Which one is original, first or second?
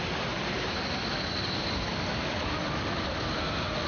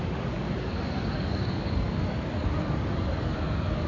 first